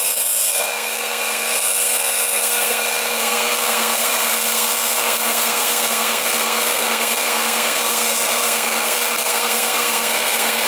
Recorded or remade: remade